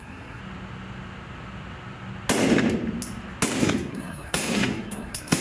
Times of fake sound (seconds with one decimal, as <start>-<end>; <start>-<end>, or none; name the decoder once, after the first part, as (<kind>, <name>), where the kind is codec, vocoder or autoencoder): 0.0-0.4 (codec, SNAC); 3.6-5.4